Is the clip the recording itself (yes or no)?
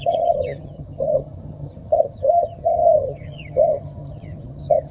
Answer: no